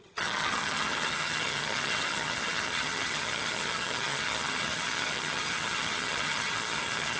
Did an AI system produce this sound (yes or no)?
yes